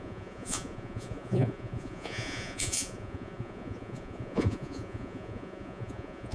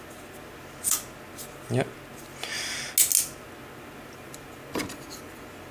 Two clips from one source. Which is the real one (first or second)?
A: second